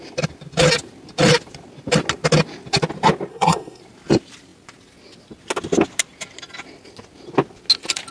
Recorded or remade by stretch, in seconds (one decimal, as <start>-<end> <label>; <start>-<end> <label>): 0.0-3.3 recorded; 3.3-3.8 remade; 3.8-8.1 recorded